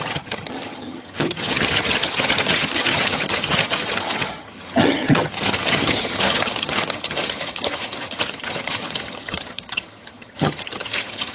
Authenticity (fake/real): fake